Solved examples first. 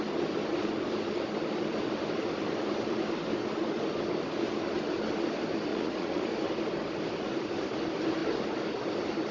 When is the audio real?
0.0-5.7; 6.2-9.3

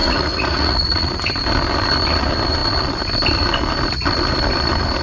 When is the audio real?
1.2-5.0

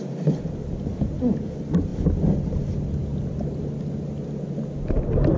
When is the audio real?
0.0-5.4

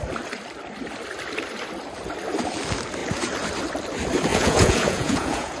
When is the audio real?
0.0-4.3

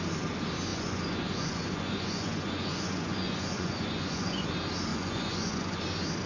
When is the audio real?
0.0-0.7; 4.5-4.9; 5.8-6.3